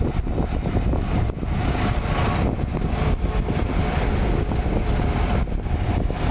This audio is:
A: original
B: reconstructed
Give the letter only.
A